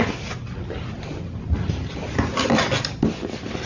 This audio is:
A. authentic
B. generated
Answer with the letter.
A